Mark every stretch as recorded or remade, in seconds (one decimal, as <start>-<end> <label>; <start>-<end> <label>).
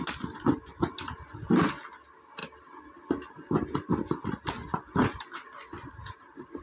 0.0-2.4 recorded; 2.4-6.6 remade